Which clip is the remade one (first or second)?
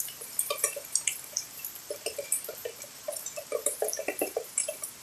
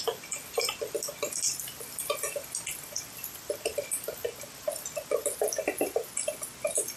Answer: first